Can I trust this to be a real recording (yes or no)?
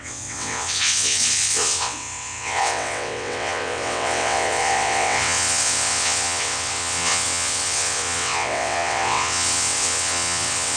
no